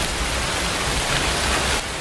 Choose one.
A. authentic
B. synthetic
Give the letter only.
A